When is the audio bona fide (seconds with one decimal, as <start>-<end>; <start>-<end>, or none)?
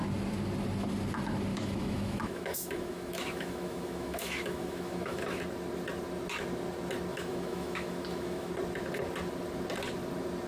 0.0-1.5; 5.4-7.1; 8.5-10.5